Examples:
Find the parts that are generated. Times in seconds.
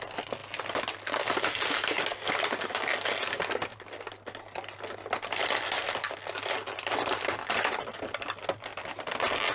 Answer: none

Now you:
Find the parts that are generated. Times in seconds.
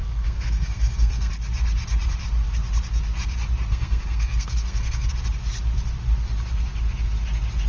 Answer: 0.0-1.3 (codec, SNAC); 3.7-5.1